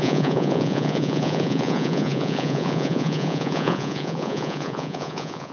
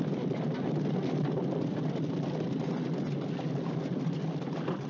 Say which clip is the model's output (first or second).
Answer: first